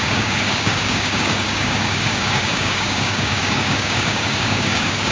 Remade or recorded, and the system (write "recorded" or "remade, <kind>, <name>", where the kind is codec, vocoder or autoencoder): remade, codec, DAC